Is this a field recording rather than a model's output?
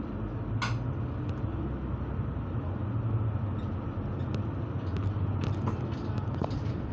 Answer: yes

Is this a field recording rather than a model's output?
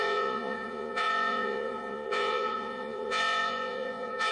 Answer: no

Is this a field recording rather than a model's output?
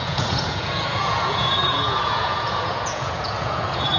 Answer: no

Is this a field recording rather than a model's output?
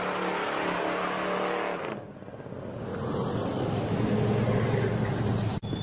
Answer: yes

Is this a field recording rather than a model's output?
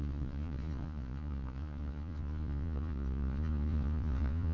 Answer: no